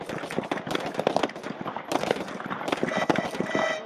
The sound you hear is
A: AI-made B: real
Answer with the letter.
B